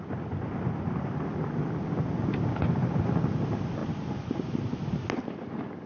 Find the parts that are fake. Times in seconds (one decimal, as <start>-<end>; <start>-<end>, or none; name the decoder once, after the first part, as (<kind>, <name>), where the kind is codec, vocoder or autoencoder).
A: none